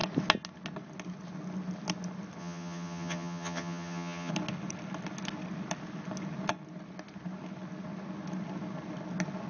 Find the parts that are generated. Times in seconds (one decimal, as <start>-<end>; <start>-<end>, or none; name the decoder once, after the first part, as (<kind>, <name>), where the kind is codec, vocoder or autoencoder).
2.4-4.3 (vocoder, HiFi-GAN)